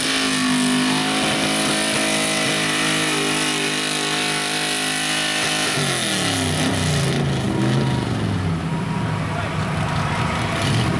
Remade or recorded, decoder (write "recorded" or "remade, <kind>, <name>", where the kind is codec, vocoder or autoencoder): recorded